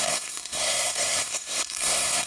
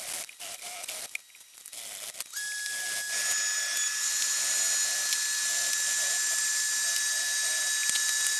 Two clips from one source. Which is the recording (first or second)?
second